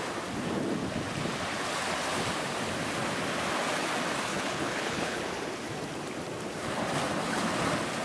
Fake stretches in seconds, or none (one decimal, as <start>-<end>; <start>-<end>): 4.3-5.2